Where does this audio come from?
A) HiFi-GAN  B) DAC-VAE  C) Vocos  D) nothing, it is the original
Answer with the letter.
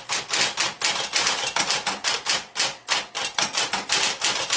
D